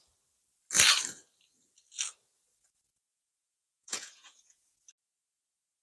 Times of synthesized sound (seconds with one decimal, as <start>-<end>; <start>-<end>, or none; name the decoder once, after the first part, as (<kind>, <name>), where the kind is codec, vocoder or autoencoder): 3.1-4.8 (vocoder, Vocos)